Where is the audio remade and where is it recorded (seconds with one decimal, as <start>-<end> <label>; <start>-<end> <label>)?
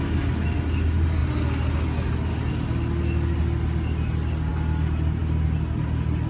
0.0-6.3 recorded